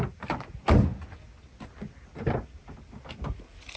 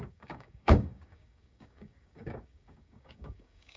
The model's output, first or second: second